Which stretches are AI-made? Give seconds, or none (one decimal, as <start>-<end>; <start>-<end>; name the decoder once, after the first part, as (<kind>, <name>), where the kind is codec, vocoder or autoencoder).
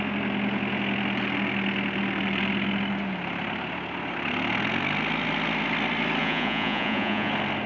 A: 6.2-7.3 (vocoder, Vocos)